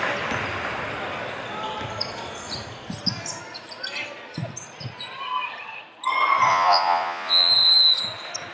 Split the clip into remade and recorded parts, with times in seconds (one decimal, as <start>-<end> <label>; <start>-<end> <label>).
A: 0.0-6.5 recorded; 6.5-7.5 remade; 7.5-8.5 recorded